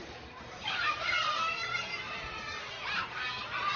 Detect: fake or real real